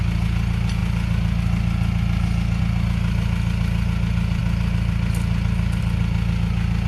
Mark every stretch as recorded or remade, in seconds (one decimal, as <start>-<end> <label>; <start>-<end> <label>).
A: 0.0-6.9 recorded